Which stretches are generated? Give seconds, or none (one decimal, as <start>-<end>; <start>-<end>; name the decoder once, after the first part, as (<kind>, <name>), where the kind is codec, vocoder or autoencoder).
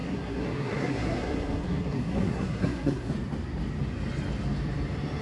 0.0-3.1 (codec, SNAC)